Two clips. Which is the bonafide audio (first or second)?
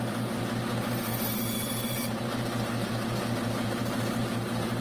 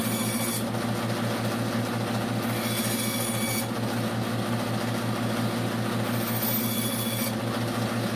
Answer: second